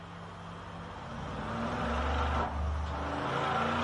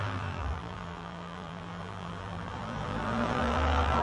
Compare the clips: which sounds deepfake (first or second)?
second